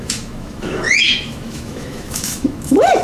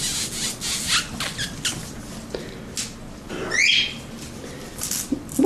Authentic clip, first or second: second